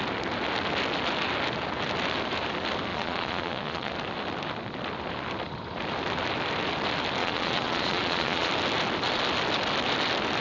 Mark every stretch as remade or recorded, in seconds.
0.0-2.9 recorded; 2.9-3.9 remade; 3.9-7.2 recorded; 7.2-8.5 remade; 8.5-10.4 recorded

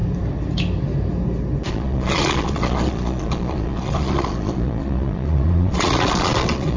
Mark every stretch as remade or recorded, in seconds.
0.0-1.7 recorded; 1.7-6.8 remade